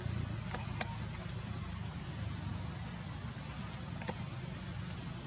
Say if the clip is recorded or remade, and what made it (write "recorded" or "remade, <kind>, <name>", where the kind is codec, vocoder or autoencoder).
recorded